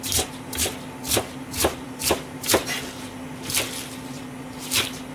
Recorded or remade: remade